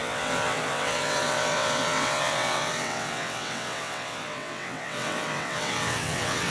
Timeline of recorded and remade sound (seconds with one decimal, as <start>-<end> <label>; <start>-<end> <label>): 0.0-6.5 remade